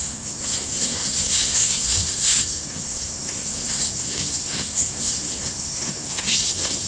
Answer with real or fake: fake